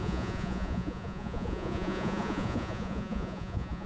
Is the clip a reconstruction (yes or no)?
yes